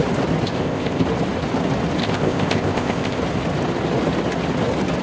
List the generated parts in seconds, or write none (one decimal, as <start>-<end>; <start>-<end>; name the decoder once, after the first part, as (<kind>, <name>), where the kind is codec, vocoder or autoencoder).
0.5-1.0 (codec, ZipCodec); 2.0-3.2